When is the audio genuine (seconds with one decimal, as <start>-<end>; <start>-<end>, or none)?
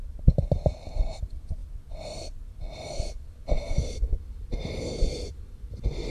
0.0-6.1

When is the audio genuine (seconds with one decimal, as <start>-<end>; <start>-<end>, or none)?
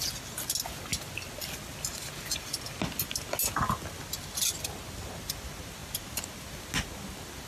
0.0-7.5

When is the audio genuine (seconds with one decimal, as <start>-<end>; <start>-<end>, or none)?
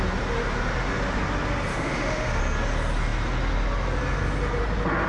0.0-1.7; 2.4-5.1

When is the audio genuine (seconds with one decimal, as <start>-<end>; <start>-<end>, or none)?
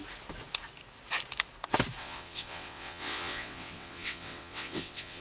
0.0-2.0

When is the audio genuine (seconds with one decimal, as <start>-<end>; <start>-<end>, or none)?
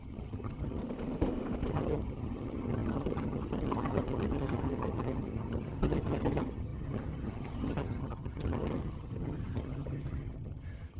0.8-1.7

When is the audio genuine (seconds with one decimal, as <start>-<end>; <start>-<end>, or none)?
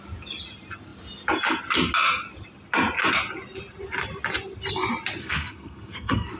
0.0-5.2